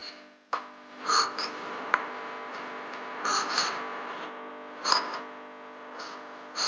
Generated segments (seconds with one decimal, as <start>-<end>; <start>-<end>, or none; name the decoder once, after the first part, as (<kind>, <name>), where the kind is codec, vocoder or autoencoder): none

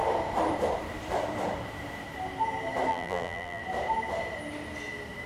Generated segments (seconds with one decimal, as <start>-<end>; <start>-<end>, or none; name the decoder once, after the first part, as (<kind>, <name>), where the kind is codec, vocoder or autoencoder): 2.9-3.6 (vocoder, BigVGAN v2)

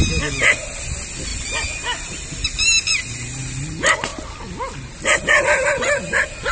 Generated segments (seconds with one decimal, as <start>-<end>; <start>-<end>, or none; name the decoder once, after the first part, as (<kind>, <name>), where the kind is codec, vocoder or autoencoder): none

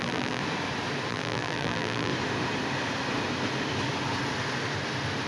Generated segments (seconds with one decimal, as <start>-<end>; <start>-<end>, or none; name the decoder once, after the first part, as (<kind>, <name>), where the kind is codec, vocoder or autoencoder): 0.0-0.4 (vocoder, BigVGAN v2); 1.1-2.1

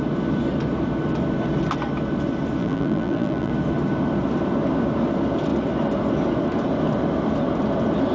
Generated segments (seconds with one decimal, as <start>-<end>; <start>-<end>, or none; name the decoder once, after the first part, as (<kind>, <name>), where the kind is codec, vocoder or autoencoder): 2.6-3.5 (vocoder, BigVGAN v2)

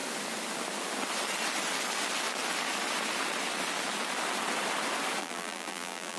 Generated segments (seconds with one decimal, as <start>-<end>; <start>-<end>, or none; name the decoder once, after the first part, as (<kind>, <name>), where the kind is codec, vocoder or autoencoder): 5.2-6.2 (vocoder, BigVGAN v2)